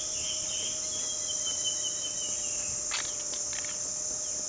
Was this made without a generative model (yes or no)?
yes